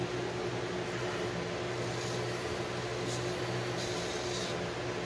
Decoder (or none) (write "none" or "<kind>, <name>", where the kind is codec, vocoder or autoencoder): none